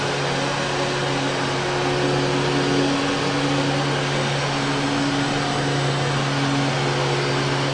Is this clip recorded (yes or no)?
yes